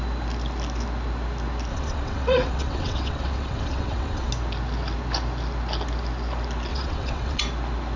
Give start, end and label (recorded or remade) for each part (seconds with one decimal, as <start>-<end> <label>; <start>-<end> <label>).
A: 0.0-1.7 recorded; 1.7-4.3 remade; 4.3-6.7 recorded; 6.7-7.4 remade; 7.4-8.0 recorded